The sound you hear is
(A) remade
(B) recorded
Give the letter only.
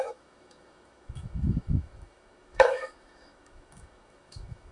A